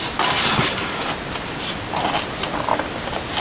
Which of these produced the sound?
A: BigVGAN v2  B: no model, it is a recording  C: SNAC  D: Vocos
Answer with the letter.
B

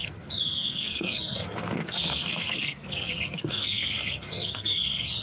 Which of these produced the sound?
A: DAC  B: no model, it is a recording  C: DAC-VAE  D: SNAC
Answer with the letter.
D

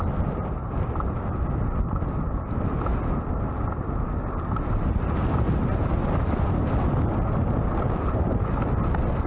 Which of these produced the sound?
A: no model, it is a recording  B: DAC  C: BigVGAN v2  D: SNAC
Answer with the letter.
A